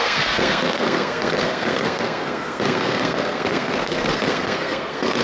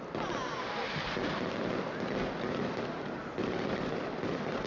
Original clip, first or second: second